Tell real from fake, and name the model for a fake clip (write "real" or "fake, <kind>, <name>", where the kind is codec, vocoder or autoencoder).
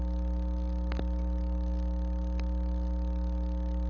real